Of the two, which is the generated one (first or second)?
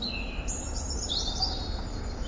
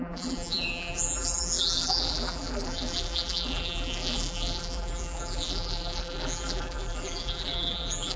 second